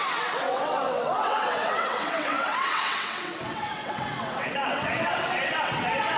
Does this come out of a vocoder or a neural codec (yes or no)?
yes